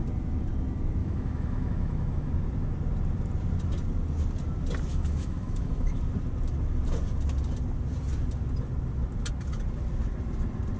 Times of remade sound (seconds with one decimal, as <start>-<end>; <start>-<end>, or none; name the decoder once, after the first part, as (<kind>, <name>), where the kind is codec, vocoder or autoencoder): 1.0-2.3 (autoencoder, DAC-VAE); 4.9-6.0